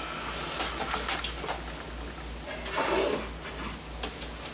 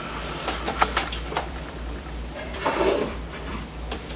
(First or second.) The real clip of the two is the first